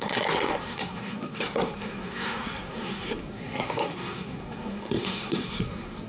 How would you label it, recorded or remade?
remade